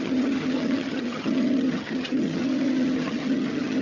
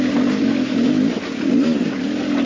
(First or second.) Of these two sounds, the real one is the second